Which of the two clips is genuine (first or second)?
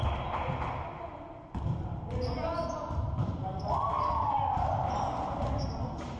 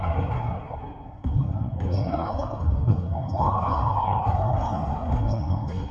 first